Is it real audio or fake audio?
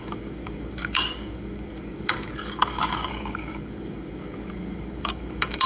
fake